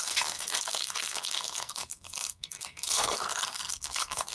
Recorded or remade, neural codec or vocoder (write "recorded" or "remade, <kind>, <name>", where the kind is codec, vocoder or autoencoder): remade, codec, SNAC